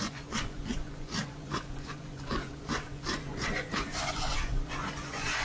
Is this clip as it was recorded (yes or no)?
no